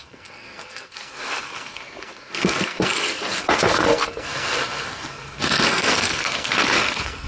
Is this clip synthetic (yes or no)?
yes